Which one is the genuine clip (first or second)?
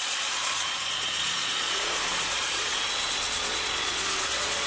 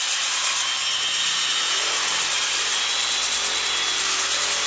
second